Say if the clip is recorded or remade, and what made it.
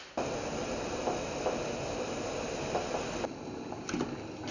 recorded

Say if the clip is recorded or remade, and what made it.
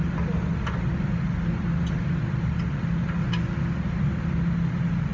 recorded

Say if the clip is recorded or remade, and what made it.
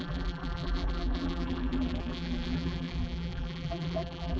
remade, vocoder, BigVGAN v2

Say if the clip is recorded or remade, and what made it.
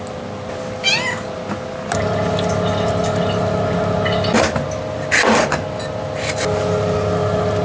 recorded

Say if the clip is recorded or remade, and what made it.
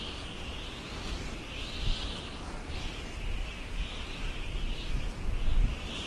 recorded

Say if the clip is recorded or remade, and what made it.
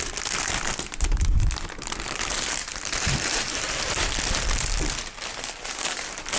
recorded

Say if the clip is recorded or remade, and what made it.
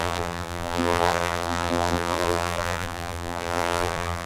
remade, vocoder, BigVGAN v2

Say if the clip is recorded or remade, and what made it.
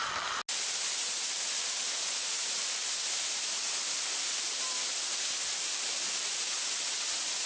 recorded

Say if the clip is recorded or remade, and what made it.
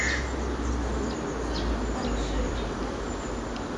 recorded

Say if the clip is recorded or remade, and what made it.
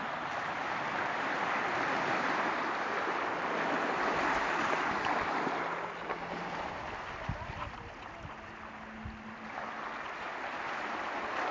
recorded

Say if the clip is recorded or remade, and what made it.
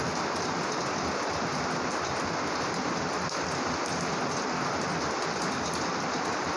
recorded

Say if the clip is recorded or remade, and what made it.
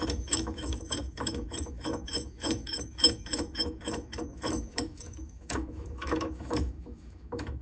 remade, autoencoder, DAC-VAE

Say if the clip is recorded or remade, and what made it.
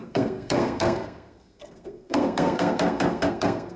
remade, codec, SNAC